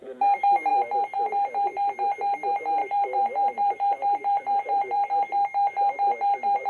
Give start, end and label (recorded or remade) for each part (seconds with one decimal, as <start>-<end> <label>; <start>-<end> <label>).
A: 0.0-0.7 recorded; 0.7-1.3 remade; 1.3-2.8 recorded; 2.8-5.1 remade; 5.1-6.7 recorded